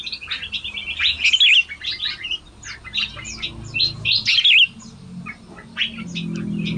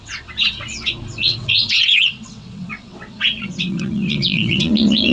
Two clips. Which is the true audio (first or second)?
first